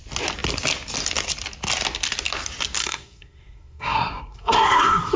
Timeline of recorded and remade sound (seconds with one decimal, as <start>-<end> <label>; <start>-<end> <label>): 0.0-2.8 recorded; 2.8-5.2 remade

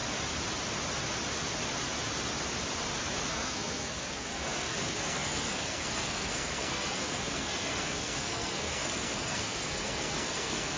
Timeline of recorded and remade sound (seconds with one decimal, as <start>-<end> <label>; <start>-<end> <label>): 0.0-3.3 recorded; 3.3-10.8 remade

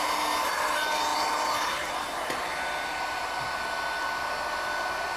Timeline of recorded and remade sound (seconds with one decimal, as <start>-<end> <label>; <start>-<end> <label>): 0.0-5.2 recorded

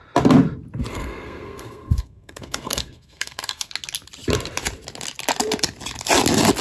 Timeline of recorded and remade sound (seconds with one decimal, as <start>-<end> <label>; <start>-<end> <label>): 0.0-0.9 recorded; 0.9-3.7 remade; 3.7-6.6 recorded